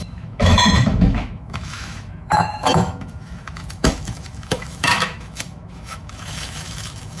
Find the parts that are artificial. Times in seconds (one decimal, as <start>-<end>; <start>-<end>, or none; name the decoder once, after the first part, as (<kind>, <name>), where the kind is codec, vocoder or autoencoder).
0.0-7.2 (autoencoder, DAC-VAE)